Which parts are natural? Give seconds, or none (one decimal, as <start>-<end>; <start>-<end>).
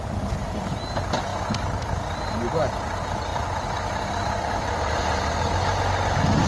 0.0-6.5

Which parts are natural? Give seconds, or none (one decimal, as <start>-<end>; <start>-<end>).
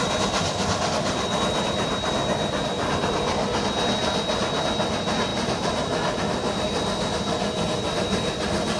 0.0-8.8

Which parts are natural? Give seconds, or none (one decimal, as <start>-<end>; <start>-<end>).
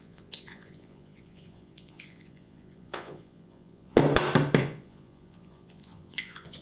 4.0-4.6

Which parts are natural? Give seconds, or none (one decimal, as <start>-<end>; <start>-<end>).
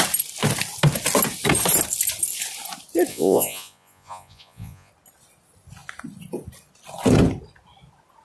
0.0-3.1; 4.9-8.2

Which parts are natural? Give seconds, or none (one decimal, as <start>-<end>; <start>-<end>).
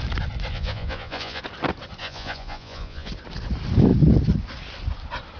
0.0-0.5; 1.4-2.0; 3.1-5.4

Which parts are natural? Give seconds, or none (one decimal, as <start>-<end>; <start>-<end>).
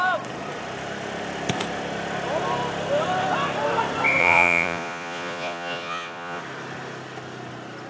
0.0-4.2; 6.4-7.9